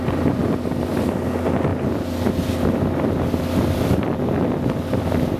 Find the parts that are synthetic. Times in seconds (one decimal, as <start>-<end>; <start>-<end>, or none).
none

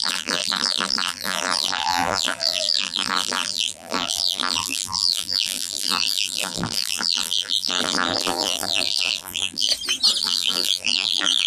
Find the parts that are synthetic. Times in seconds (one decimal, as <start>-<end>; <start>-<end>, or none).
0.0-9.7; 10.2-11.5

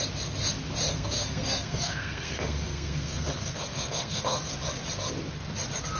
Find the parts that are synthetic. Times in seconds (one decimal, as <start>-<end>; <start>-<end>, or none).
0.9-4.5

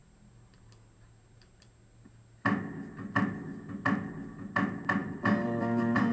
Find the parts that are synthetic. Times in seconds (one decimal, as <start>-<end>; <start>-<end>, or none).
5.0-6.1